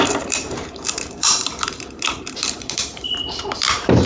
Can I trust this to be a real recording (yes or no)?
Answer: no